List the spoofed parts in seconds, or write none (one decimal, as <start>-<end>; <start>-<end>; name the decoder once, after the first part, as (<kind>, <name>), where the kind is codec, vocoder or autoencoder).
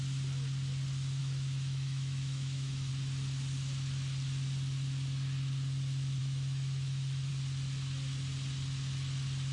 1.2-2.9 (autoencoder, DAC-VAE); 6.2-7.3